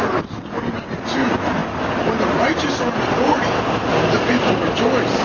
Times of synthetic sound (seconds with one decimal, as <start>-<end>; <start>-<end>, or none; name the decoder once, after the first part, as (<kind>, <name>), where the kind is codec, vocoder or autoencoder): none

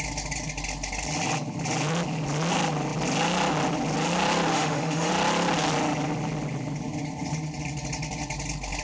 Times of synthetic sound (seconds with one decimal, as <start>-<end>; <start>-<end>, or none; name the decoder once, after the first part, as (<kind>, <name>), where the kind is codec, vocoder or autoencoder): 4.5-5.1 (autoencoder, DAC-VAE)

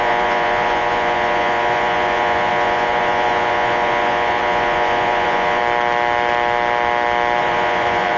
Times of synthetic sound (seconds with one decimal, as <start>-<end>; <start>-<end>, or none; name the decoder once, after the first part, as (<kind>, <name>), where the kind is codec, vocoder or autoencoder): 0.0-5.6 (vocoder, Vocos); 7.4-8.2

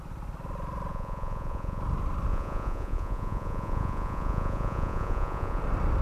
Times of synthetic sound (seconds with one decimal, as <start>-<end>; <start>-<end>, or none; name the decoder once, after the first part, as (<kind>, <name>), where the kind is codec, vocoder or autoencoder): 0.9-1.8 (vocoder, Vocos); 2.3-5.6

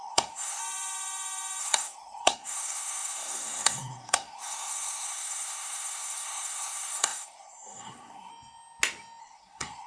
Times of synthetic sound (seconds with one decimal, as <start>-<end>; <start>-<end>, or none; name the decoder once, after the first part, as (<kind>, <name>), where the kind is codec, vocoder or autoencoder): 0.0-0.6 (codec, SNAC); 1.6-8.3; 9.2-9.9

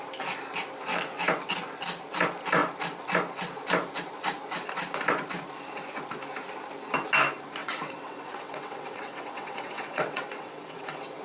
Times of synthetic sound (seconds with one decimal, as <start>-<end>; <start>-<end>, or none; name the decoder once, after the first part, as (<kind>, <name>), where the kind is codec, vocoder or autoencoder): 7.6-11.2 (vocoder, WaveNeXt)

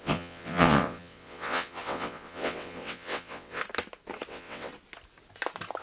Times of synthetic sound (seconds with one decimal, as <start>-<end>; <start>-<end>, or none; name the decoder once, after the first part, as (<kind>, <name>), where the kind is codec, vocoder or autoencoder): 0.0-3.6 (vocoder, WaveNeXt); 4.3-4.7

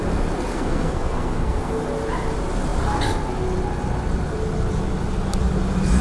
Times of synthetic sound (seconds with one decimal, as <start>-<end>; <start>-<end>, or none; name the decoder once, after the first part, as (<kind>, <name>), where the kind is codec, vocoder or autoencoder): 0.5-1.8 (codec, SNAC)